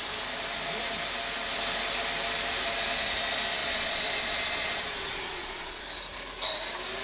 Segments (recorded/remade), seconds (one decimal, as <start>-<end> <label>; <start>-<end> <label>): 0.0-3.6 recorded; 3.6-5.8 remade; 5.8-7.0 recorded